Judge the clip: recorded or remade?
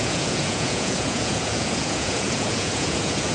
remade